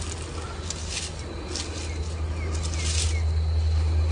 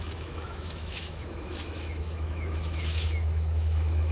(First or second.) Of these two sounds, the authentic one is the first